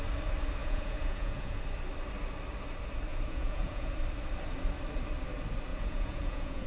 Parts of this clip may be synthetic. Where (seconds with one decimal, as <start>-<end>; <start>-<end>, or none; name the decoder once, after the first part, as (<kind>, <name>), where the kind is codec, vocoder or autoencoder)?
0.6-1.6 (vocoder, Vocos); 3.1-3.9; 5.7-6.7

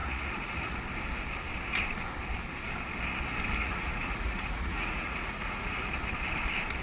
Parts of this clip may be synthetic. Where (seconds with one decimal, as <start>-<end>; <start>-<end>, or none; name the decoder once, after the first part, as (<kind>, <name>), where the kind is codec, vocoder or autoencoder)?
0.0-0.8 (vocoder, Vocos); 3.6-5.9

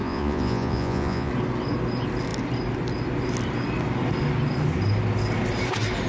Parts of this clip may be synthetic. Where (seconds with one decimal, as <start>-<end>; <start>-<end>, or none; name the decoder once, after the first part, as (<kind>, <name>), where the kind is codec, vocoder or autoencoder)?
0.0-1.3 (vocoder, Vocos)

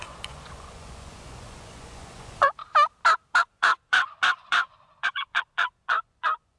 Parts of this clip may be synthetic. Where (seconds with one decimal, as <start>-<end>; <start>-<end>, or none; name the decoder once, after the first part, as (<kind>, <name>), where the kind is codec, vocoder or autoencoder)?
0.0-2.6 (vocoder, Vocos); 3.4-6.6

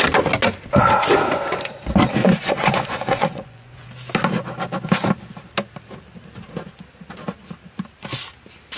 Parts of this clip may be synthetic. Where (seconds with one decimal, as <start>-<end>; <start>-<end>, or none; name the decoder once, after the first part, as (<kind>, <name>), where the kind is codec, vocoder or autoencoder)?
2.2-3.9 (vocoder, Vocos)

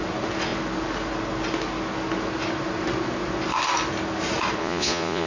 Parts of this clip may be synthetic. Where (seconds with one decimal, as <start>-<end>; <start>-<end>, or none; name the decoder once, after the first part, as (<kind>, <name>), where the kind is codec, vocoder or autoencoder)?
4.6-5.3 (vocoder, Vocos)

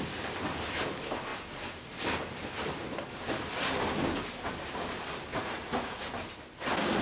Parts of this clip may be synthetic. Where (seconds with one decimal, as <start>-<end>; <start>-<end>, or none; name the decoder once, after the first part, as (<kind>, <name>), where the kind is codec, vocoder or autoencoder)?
5.3-6.0 (vocoder, Vocos)

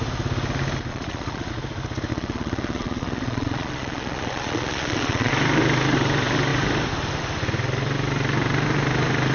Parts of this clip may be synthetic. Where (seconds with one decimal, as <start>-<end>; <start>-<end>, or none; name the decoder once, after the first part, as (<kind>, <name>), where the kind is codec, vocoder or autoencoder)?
0.9-1.5 (vocoder, Vocos); 2.1-5.3